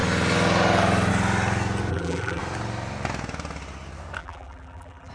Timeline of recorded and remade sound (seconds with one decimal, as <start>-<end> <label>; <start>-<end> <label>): 0.0-1.9 recorded; 1.9-2.4 remade; 2.4-4.2 recorded; 4.2-5.1 remade